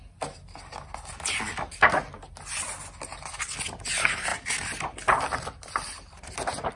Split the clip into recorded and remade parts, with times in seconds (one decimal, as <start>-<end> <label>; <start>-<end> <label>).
0.0-4.3 recorded; 4.3-6.8 remade